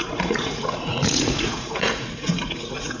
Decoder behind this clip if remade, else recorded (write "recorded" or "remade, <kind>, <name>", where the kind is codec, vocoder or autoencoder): remade, vocoder, Vocos